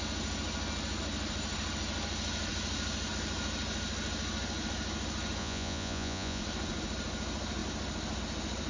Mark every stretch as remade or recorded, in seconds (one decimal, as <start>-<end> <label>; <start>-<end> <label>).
0.0-5.4 recorded; 5.4-6.4 remade; 6.4-8.7 recorded